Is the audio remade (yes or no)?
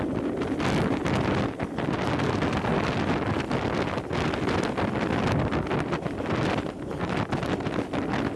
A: no